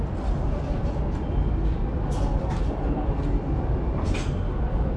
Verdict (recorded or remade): recorded